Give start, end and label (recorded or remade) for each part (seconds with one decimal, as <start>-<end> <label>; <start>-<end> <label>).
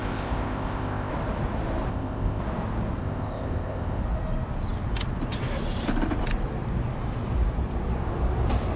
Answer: 0.0-1.1 remade; 1.1-1.9 recorded; 1.9-2.4 remade; 2.4-3.0 recorded; 3.0-4.0 remade; 4.0-8.8 recorded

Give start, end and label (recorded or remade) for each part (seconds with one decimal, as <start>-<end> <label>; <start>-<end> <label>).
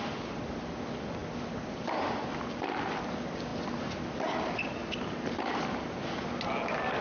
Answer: 0.0-7.0 recorded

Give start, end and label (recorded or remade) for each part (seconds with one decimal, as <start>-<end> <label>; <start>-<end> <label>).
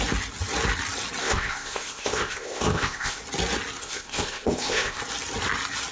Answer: 0.0-1.2 recorded; 1.2-3.2 remade; 3.2-3.8 recorded; 3.8-5.0 remade; 5.0-5.9 recorded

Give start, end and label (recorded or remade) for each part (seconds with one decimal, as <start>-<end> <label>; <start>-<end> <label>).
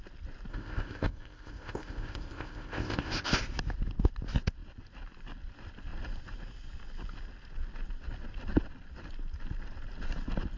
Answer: 0.0-0.5 recorded; 0.5-3.4 remade; 3.4-10.6 recorded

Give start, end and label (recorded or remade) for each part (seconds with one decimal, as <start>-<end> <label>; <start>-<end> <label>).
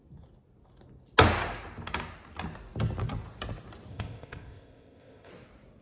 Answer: 0.0-3.9 recorded; 3.9-5.3 remade; 5.3-5.8 recorded